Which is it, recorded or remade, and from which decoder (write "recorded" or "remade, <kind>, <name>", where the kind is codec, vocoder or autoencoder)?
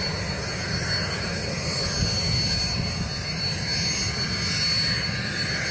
recorded